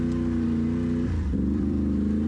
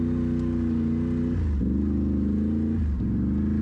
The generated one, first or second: first